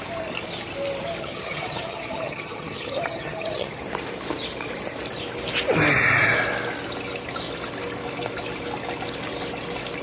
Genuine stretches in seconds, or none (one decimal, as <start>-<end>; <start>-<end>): 0.0-1.2; 3.8-10.0